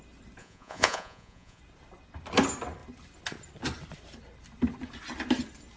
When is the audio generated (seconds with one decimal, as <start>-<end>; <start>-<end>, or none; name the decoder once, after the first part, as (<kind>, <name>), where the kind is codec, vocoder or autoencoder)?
0.4-1.6 (vocoder, Vocos)